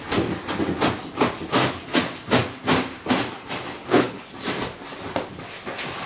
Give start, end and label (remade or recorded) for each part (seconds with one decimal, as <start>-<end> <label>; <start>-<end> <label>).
0.0-3.8 recorded; 3.8-4.3 remade; 4.3-6.1 recorded